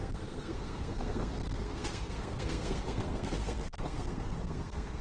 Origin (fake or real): fake